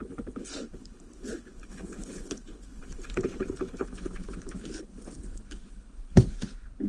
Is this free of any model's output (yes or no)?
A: no